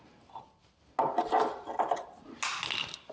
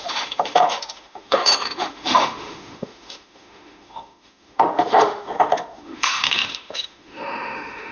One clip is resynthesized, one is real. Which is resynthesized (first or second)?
second